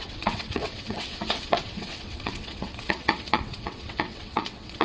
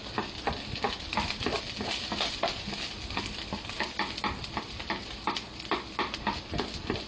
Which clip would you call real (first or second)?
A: second